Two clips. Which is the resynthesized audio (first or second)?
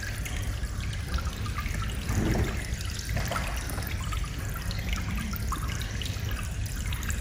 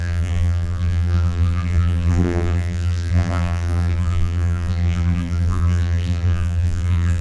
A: second